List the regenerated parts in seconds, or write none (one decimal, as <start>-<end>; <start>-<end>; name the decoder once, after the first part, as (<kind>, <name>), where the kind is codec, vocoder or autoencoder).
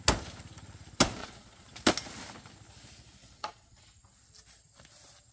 1.2-1.7 (vocoder, Vocos); 3.2-3.8